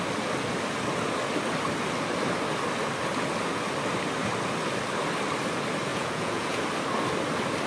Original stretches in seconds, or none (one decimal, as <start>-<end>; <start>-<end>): 0.0-5.9; 6.6-7.7